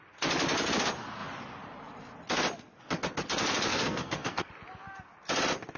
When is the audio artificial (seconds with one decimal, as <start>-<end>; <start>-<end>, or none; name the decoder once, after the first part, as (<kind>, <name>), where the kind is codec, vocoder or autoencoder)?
3.7-4.5 (codec, SNAC)